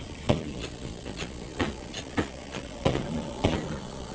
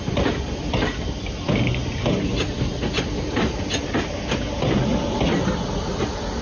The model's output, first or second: first